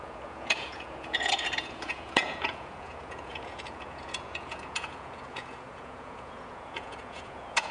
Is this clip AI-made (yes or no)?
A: yes